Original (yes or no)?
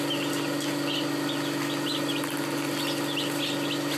yes